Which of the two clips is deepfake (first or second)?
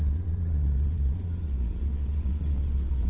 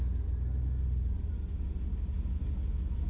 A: first